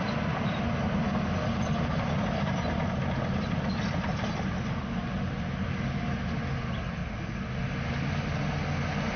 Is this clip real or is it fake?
real